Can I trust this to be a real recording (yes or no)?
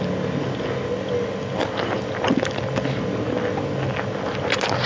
yes